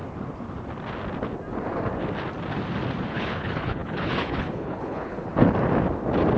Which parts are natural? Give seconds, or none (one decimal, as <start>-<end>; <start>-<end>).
0.0-3.1; 5.3-6.4